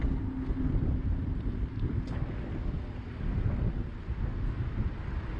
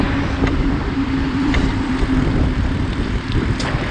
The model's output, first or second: second